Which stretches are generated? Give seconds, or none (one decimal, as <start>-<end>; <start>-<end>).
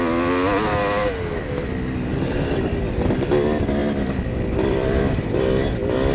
2.1-2.6; 3.8-5.0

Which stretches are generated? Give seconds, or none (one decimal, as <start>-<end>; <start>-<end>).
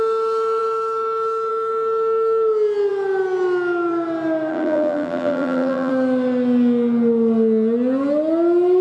4.5-5.9